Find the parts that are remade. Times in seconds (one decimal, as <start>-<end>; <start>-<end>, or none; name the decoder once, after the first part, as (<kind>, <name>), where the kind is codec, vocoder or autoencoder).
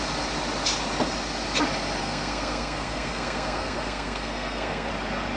2.0-4.9 (codec, SNAC)